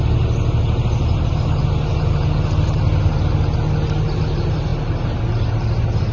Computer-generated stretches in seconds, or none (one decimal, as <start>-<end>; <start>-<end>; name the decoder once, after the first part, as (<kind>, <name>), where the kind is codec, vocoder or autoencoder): none